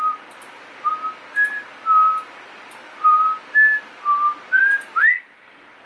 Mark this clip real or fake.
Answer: real